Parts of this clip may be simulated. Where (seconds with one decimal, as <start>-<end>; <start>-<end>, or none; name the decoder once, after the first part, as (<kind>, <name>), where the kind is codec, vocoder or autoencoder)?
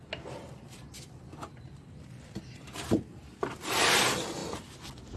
none